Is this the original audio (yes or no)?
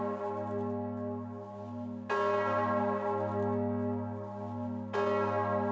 yes